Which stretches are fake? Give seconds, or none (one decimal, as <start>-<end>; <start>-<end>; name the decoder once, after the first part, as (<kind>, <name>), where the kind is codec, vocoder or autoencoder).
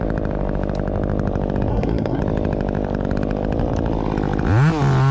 1.7-2.2 (codec, SNAC)